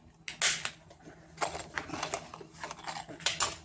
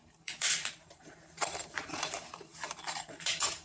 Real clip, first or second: first